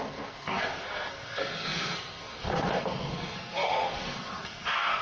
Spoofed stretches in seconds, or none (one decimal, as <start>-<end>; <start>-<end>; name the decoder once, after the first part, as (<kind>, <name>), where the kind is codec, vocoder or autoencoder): 0.0-5.0 (codec, SNAC)